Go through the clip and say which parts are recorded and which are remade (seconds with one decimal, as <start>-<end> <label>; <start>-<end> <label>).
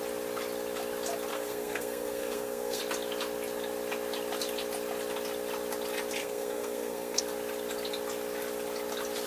0.0-1.3 recorded; 1.3-2.8 remade; 2.8-6.2 recorded; 6.2-7.2 remade; 7.2-9.3 recorded